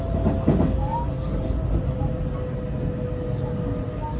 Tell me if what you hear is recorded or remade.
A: recorded